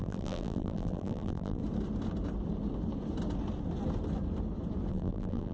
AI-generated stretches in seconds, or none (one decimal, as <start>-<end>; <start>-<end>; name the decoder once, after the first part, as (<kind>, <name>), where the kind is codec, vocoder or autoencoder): 0.0-1.6 (vocoder, BigVGAN v2); 4.9-5.5